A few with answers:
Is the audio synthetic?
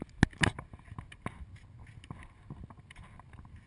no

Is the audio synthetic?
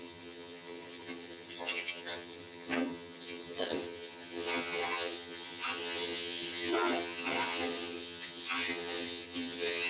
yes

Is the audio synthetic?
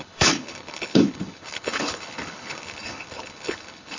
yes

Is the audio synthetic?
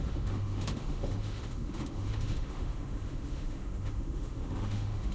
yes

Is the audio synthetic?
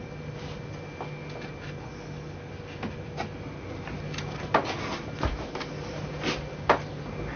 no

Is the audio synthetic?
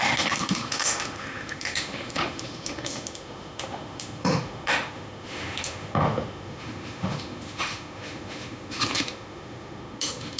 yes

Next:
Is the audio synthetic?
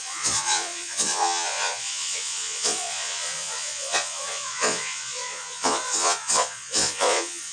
yes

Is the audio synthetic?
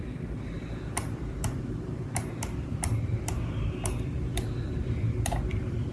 yes